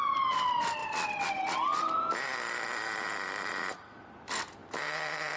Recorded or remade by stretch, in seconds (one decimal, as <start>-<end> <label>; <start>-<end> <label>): 0.0-2.3 recorded; 2.3-3.5 remade; 3.5-4.6 recorded; 4.6-5.4 remade